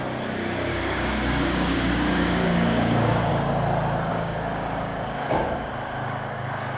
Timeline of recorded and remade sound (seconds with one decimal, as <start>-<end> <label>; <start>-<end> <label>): 0.0-0.7 recorded; 0.7-3.3 remade; 3.3-4.1 recorded; 4.1-5.7 remade; 5.7-6.8 recorded